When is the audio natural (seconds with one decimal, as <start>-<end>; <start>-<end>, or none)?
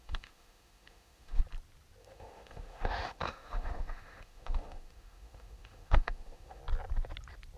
1.4-2.0; 6.6-7.6